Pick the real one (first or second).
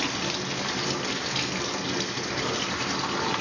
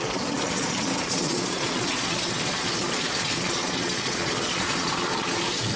first